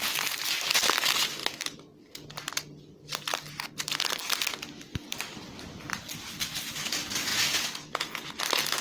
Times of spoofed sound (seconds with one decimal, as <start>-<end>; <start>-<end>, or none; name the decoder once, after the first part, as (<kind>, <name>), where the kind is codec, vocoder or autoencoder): 7.3-8.4 (vocoder, Vocos)